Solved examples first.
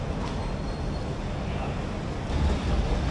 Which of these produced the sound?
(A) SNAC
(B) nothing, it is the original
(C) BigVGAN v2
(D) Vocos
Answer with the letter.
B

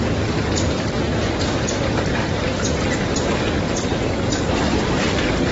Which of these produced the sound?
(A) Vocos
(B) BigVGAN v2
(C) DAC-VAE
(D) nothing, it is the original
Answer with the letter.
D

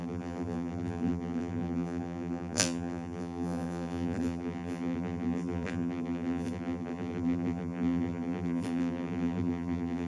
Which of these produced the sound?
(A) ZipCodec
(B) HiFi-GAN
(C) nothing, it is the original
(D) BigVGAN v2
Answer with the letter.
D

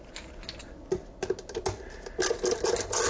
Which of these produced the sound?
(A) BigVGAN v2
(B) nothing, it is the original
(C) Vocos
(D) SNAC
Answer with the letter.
B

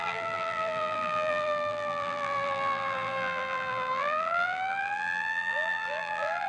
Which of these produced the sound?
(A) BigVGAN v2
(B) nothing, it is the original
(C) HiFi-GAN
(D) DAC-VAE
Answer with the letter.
A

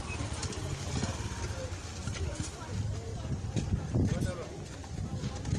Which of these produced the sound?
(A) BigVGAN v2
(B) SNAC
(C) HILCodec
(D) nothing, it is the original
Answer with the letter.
D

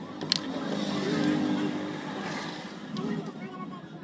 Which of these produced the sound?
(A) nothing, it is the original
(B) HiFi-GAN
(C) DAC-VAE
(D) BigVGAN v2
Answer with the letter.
A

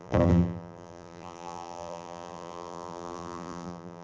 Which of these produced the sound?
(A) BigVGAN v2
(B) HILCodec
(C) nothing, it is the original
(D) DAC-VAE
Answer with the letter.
A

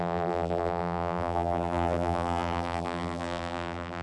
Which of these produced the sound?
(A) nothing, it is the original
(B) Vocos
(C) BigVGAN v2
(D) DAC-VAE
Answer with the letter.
C